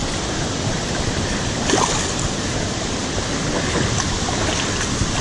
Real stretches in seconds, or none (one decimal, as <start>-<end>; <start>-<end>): 0.0-5.2